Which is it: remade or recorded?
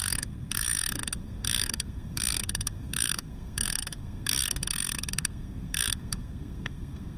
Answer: remade